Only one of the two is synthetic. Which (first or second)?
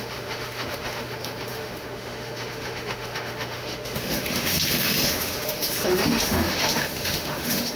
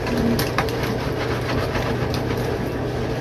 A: first